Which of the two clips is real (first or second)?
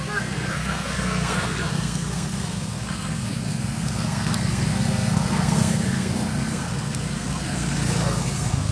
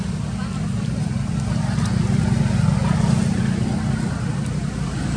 second